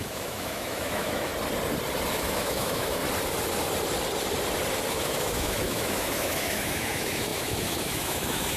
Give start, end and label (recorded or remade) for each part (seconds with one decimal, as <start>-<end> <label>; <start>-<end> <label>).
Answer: 0.0-1.3 remade; 1.3-2.1 recorded; 2.1-3.0 remade; 3.0-4.9 recorded; 4.9-8.6 remade